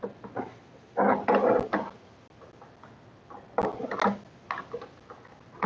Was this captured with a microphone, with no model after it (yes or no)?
yes